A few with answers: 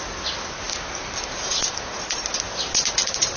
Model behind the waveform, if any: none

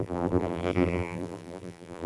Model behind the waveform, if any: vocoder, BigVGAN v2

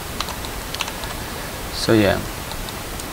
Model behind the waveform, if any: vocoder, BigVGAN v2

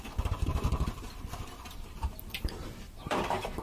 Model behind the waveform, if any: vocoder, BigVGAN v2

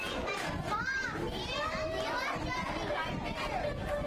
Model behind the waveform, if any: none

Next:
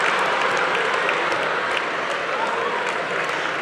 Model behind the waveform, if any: none